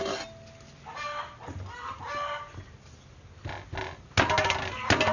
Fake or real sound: real